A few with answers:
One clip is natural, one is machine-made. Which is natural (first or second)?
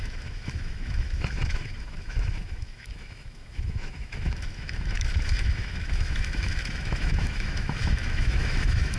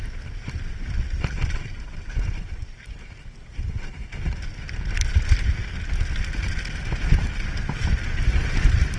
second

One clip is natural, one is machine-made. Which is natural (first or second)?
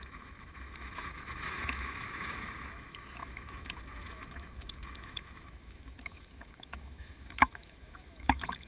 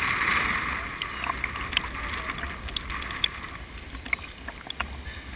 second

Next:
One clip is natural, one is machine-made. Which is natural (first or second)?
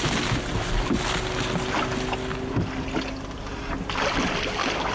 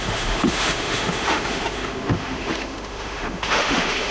first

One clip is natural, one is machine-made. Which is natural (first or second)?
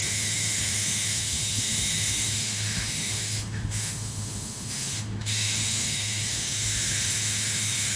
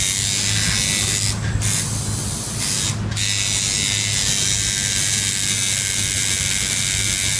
second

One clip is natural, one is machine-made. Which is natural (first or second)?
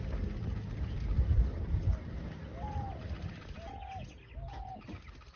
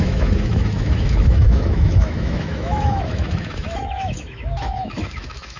first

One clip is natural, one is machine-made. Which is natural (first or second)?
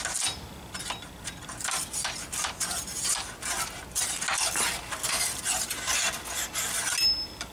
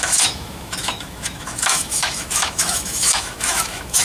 first